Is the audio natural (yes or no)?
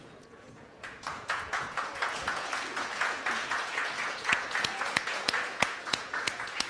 no